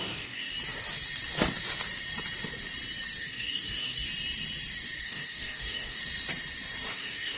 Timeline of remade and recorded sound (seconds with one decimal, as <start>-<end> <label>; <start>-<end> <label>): 0.0-0.5 remade; 0.5-3.2 recorded; 3.2-4.1 remade; 4.1-5.0 recorded; 5.0-6.0 remade; 6.0-6.9 recorded; 6.9-7.4 remade